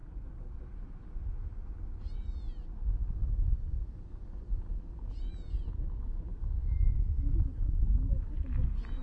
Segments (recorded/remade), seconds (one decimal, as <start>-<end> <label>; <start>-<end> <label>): 0.0-6.6 recorded; 6.6-7.4 remade; 7.4-9.0 recorded